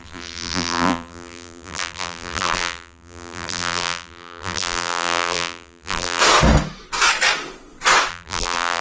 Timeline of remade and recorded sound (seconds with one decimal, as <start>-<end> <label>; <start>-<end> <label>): 0.0-6.2 remade; 6.2-8.1 recorded; 8.1-8.8 remade